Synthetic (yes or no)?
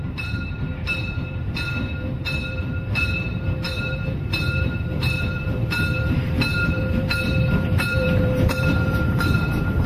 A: yes